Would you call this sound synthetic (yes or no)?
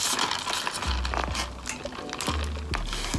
no